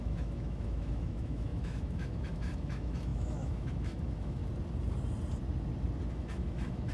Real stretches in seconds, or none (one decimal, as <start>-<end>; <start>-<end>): 4.4-6.1